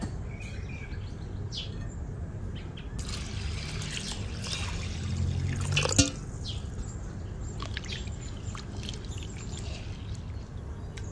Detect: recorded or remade recorded